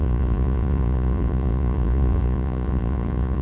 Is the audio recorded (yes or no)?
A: no